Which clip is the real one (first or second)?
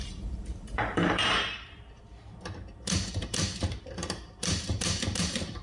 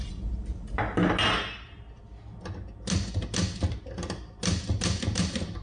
second